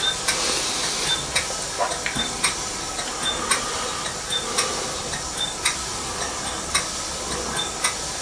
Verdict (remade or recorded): recorded